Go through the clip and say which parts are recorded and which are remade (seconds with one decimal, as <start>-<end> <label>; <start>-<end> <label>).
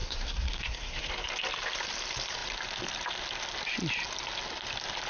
0.0-1.1 remade; 1.1-5.1 recorded